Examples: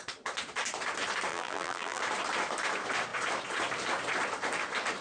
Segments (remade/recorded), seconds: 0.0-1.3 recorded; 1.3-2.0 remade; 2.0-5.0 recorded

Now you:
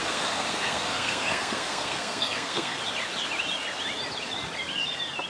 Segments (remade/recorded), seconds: 0.0-2.8 remade; 2.8-5.3 recorded